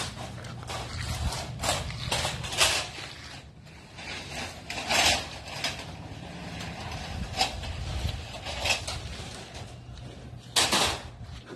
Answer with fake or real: real